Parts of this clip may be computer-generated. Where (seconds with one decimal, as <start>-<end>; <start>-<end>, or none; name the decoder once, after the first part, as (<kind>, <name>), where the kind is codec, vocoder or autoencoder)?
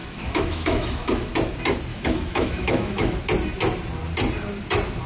0.0-1.3 (autoencoder, DAC-VAE); 1.9-3.2